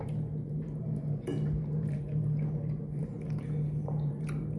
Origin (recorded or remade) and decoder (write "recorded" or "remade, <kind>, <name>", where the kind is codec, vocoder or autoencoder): remade, vocoder, BigVGAN v2